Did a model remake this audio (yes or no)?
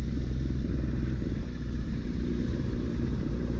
yes